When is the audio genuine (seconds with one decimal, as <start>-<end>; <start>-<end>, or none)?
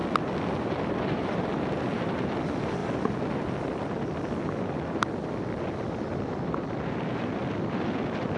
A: 0.0-0.6; 2.8-4.7